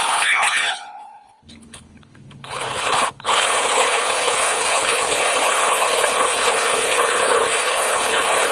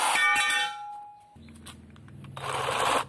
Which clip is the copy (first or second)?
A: first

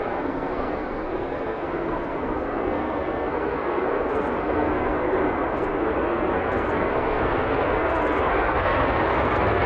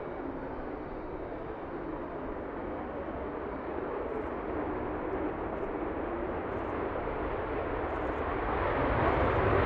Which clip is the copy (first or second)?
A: first